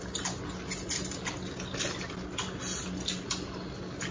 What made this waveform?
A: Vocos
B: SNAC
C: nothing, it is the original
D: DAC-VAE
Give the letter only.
C